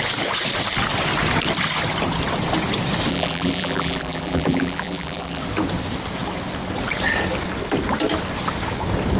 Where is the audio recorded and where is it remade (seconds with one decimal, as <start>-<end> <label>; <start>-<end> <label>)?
0.0-3.1 recorded; 3.1-5.4 remade; 5.4-9.2 recorded